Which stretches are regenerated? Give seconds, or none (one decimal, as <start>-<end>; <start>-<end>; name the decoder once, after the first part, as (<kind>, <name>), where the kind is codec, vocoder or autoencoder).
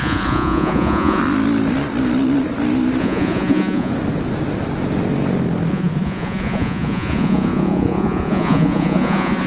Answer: 0.0-1.2 (vocoder, Vocos); 3.0-3.9; 5.7-9.5